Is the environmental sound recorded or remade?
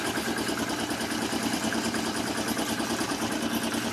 recorded